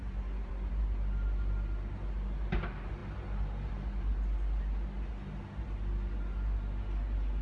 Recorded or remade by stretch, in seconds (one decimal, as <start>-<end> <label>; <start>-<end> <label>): 0.0-7.4 recorded